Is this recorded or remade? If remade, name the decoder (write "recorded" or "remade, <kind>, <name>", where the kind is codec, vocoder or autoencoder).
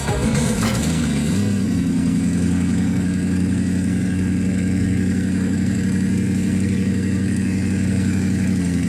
remade, codec, SNAC